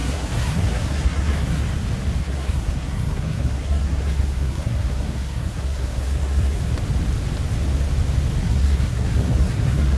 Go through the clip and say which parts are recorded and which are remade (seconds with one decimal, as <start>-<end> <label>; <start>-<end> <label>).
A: 0.0-1.6 remade; 1.6-2.2 recorded; 2.2-6.6 remade; 6.6-8.4 recorded; 8.4-10.0 remade